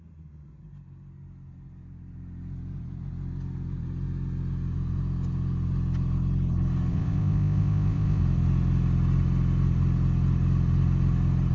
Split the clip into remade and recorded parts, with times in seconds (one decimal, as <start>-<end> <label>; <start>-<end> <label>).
0.0-6.9 recorded; 6.9-8.2 remade; 8.2-11.5 recorded